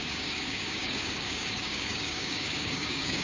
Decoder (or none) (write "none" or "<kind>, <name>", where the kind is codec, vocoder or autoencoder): codec, DAC